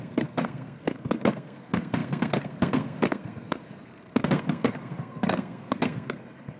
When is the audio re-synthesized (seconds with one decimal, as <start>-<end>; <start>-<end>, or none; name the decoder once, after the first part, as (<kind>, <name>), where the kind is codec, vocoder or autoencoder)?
0.0-6.6 (codec, SNAC)

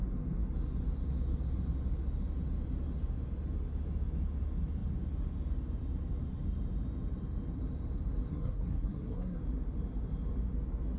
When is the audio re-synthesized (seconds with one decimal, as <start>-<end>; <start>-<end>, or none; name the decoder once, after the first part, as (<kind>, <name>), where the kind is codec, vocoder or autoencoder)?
8.3-9.4 (codec, SNAC)

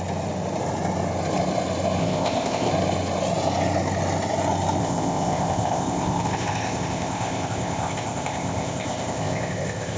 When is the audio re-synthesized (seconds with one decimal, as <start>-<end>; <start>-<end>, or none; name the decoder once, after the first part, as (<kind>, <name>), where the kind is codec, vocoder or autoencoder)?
2.0-2.7 (codec, ZipCodec); 4.8-10.0

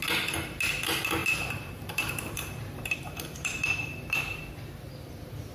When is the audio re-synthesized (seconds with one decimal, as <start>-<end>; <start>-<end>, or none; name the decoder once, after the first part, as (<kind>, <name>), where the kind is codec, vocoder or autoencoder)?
1.2-4.5 (vocoder, BigVGAN v2)